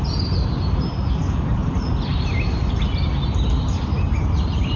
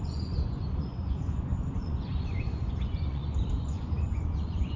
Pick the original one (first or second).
first